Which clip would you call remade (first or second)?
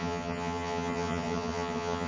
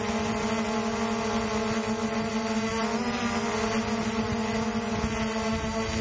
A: first